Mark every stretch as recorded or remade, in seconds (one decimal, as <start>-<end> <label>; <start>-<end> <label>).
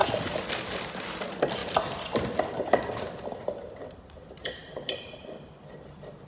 0.0-1.6 recorded; 1.6-2.4 remade; 2.4-4.6 recorded; 4.6-5.5 remade; 5.5-6.3 recorded